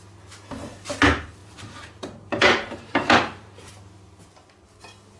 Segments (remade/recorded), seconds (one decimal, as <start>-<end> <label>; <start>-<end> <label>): 0.0-1.4 recorded; 1.4-3.7 remade; 3.7-5.2 recorded